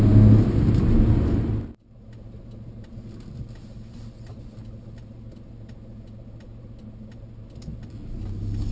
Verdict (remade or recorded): recorded